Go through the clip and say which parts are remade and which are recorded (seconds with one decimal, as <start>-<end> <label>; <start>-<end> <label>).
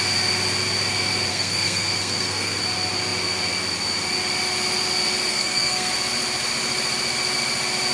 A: 0.0-1.3 recorded; 1.3-2.6 remade; 2.6-5.3 recorded; 5.3-5.9 remade; 5.9-7.9 recorded